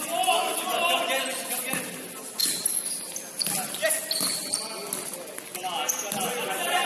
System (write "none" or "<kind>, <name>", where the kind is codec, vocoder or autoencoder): none